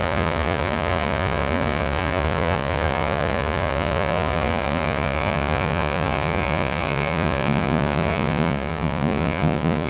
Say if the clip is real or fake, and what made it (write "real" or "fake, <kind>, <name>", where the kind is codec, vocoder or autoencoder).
fake, vocoder, Vocos